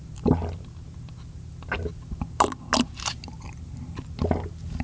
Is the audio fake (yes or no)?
no